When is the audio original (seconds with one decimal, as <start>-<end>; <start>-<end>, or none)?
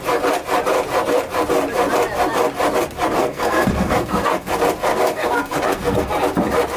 0.0-3.2; 4.5-4.9; 6.1-6.8